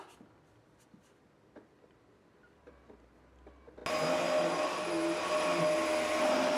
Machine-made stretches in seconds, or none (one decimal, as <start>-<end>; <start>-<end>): none